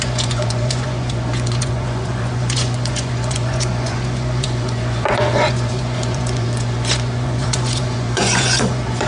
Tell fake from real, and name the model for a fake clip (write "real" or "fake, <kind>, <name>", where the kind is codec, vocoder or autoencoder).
fake, vocoder, Vocos